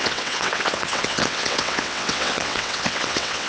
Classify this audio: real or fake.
fake